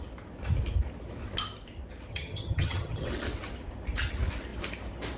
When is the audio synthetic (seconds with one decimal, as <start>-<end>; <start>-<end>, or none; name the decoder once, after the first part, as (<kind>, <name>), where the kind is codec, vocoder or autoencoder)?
2.1-3.1 (vocoder, HiFi-GAN)